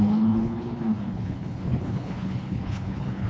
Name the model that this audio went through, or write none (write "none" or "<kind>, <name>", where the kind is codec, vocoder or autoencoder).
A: codec, HILCodec